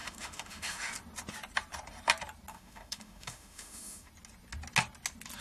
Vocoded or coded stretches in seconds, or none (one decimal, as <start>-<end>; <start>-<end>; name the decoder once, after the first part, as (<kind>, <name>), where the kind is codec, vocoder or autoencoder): 0.0-0.9 (autoencoder, DAC-VAE); 2.5-4.1